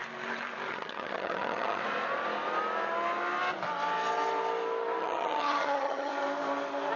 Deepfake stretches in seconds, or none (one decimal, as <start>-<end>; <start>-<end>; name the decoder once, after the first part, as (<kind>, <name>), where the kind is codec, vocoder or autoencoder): 0.7-1.8 (vocoder, HiFi-GAN); 5.0-6.1